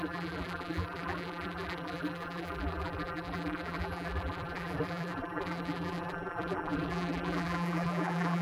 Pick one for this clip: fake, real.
fake